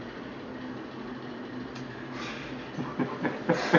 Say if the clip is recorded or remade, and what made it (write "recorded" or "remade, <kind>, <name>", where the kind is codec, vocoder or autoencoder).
recorded